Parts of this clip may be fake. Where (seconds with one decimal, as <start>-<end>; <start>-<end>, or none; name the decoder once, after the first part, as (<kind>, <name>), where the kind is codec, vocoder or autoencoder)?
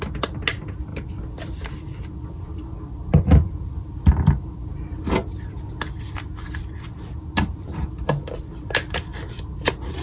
none